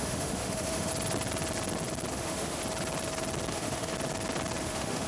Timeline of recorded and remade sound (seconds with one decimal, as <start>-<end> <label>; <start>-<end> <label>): 0.0-0.9 remade; 0.9-2.1 recorded; 2.1-2.6 remade; 2.6-3.5 recorded; 3.5-3.9 remade; 3.9-4.6 recorded; 4.6-5.1 remade